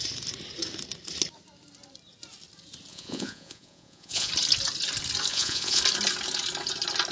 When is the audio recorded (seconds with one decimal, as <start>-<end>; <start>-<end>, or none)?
0.0-2.9; 4.3-5.3; 5.8-7.1